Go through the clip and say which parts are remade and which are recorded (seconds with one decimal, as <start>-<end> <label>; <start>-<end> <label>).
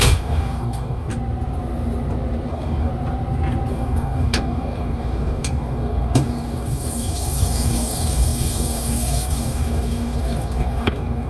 0.0-1.1 remade; 1.1-2.5 recorded; 2.5-2.9 remade; 2.9-3.7 recorded; 3.7-11.3 remade